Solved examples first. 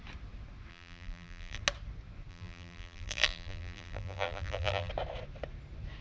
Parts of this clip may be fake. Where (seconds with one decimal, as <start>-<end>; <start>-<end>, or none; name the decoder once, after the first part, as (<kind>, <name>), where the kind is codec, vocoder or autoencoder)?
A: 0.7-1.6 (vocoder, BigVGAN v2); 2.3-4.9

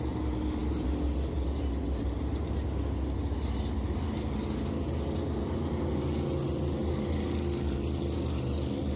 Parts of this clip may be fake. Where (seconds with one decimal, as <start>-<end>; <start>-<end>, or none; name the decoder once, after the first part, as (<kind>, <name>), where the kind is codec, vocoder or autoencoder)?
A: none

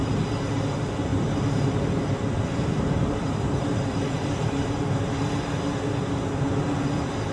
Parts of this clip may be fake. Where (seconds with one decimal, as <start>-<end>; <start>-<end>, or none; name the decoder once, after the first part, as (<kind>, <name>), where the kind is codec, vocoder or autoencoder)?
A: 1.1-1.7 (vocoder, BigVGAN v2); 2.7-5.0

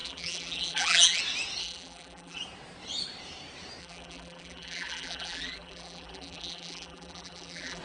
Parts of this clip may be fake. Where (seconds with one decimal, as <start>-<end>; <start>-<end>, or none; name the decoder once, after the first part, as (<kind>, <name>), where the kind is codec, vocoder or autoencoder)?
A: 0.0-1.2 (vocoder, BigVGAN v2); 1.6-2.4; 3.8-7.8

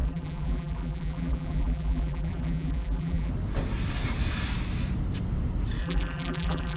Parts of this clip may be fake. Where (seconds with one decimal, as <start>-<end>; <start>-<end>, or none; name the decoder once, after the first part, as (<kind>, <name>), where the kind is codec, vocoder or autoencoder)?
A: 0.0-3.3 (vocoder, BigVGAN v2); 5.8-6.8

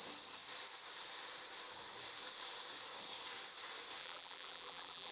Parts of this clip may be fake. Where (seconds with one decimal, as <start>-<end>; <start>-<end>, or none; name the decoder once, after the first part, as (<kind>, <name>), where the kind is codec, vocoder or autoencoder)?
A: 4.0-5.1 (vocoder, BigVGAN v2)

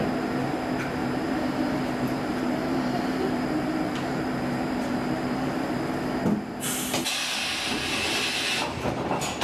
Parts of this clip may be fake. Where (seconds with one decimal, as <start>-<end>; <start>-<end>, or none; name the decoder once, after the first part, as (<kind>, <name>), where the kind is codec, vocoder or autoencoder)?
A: 1.0-5.9 (vocoder, BigVGAN v2)

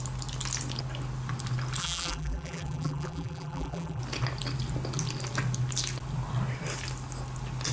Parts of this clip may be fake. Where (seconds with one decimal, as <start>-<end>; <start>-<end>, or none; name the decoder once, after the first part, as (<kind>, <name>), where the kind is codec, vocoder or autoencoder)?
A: 1.8-4.0 (vocoder, BigVGAN v2)